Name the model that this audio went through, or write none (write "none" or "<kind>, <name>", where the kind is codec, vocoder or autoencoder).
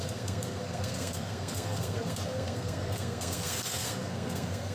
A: codec, SNAC